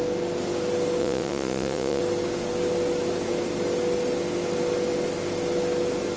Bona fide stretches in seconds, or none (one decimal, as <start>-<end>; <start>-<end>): 0.0-1.0; 2.0-6.2